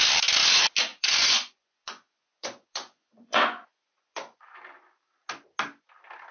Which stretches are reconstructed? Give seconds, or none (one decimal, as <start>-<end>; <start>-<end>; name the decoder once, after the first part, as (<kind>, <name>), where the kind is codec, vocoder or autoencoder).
0.9-4.6 (vocoder, Vocos)